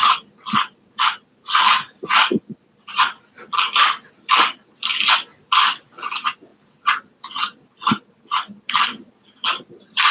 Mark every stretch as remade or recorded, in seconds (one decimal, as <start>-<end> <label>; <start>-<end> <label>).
0.0-2.1 remade; 2.1-10.1 recorded